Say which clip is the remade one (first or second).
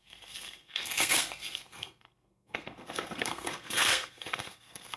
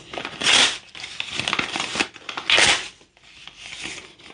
first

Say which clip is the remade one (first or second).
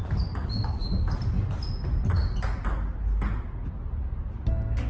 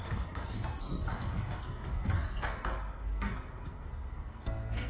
second